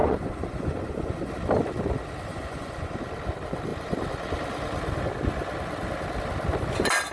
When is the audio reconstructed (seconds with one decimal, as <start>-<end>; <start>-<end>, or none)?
0.0-1.3; 2.3-2.9